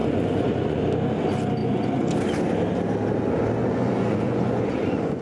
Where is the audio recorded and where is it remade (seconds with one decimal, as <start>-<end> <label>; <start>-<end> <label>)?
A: 0.0-0.8 remade; 0.8-1.6 recorded; 1.6-2.1 remade; 2.1-3.6 recorded; 3.6-5.2 remade